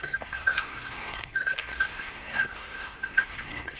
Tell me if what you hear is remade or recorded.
remade